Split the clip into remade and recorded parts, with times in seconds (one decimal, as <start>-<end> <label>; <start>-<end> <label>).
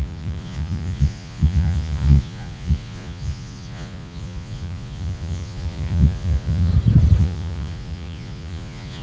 0.0-6.7 remade; 6.7-7.2 recorded; 7.2-9.0 remade